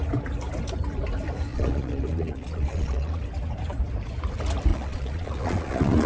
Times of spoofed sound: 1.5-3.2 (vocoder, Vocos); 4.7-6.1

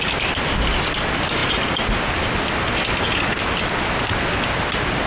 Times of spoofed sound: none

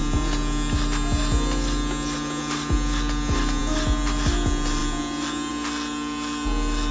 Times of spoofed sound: none

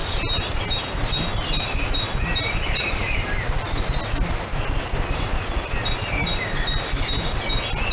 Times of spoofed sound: none